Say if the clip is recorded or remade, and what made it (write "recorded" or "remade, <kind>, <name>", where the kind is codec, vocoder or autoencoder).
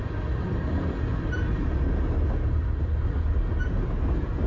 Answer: recorded